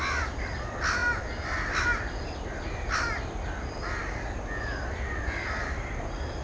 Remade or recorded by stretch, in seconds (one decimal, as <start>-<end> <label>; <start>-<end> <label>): 0.0-6.4 recorded